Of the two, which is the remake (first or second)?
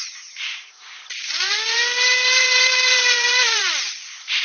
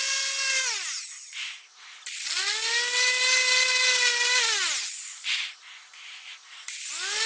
first